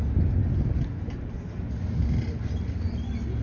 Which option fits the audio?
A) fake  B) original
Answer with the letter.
B